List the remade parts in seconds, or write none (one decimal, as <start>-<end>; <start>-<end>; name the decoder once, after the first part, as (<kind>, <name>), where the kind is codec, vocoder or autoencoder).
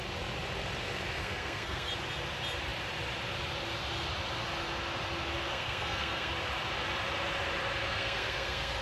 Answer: 1.2-1.9 (codec, SNAC); 5.5-6.3; 7.9-8.8